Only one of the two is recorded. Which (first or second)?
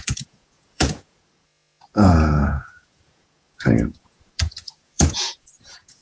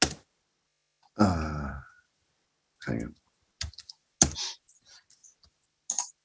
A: second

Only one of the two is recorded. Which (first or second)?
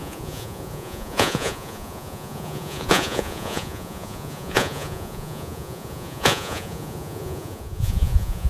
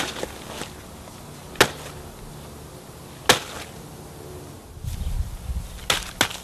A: second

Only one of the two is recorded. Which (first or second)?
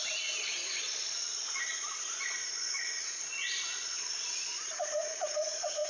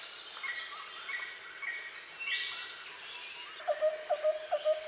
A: second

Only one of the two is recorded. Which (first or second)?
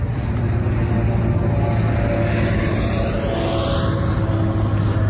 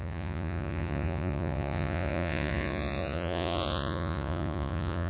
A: first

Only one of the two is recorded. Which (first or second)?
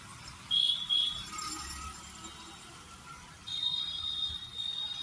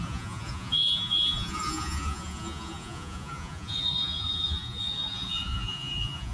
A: first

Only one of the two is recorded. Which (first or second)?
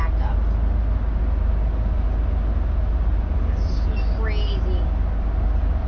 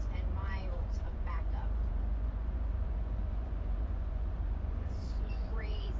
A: first